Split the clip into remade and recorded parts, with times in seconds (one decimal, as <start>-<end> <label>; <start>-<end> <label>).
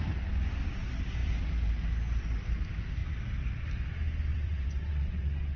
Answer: 0.0-4.3 recorded; 4.3-5.6 remade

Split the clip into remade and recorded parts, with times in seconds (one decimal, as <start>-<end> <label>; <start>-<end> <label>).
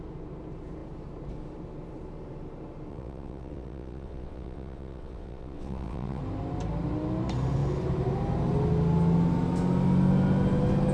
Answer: 0.0-2.9 recorded; 2.9-6.2 remade; 6.2-10.9 recorded